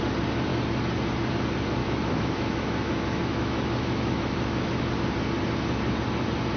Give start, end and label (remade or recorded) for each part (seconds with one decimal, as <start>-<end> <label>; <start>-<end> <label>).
0.0-1.8 recorded; 1.8-4.9 remade; 4.9-6.6 recorded